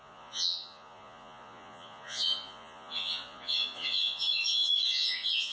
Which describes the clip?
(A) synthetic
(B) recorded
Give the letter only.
A